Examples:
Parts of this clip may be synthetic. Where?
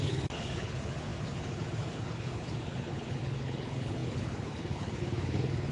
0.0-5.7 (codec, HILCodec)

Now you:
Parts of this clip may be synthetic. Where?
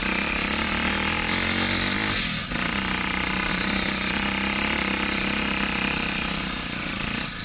none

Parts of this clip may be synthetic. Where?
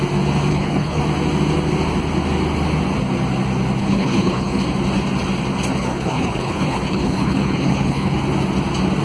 0.5-1.0 (codec, HILCodec); 3.8-4.6; 5.8-8.2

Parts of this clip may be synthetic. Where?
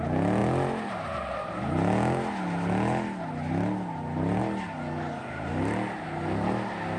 none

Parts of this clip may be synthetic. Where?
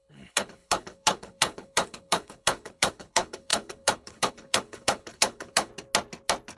0.0-5.7 (codec, HILCodec)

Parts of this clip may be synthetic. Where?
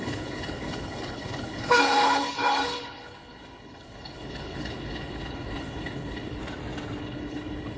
0.0-6.4 (codec, HILCodec); 7.0-7.8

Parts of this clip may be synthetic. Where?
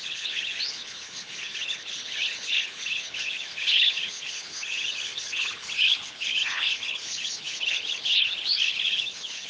0.0-9.5 (codec, HILCodec)